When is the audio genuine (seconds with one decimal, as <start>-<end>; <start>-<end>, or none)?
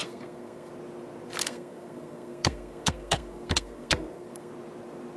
0.7-1.4; 4.5-5.2